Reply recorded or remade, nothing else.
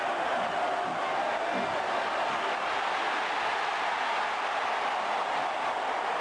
recorded